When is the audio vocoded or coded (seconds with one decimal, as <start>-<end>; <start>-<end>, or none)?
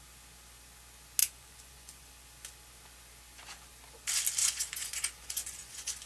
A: 1.2-2.1; 4.4-6.1